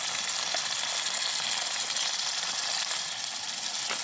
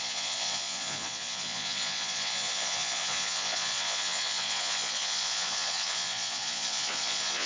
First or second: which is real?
first